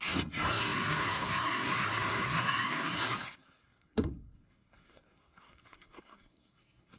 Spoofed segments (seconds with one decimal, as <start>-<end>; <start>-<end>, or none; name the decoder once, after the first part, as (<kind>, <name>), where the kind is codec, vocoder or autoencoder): 0.0-7.0 (codec, SNAC)